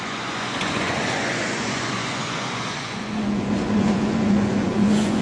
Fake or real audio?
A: fake